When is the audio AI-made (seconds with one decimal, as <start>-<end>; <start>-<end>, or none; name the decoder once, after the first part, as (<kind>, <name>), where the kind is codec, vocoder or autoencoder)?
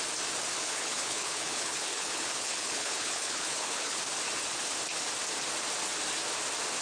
0.6-4.0 (codec, HILCodec)